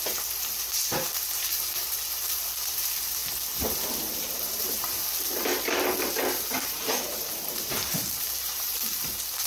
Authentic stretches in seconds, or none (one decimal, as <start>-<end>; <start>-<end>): 3.2-4.1; 5.5-6.5